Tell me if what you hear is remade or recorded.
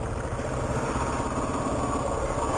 recorded